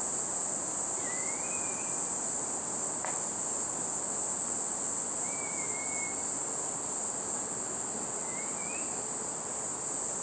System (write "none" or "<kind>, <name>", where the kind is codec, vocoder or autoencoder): none